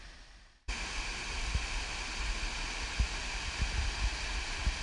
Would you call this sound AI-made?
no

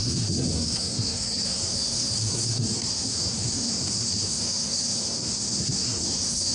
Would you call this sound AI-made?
yes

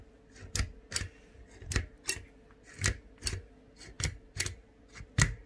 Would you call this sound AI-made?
no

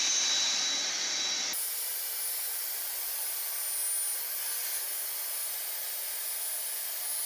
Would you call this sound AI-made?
no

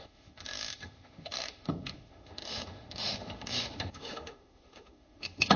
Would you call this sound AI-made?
yes